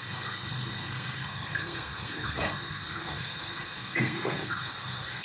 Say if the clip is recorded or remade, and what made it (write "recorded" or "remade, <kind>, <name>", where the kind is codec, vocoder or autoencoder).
remade, codec, SNAC